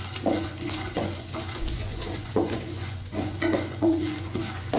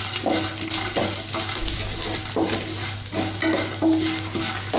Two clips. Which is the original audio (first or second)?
second